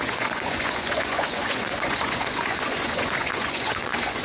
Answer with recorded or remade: remade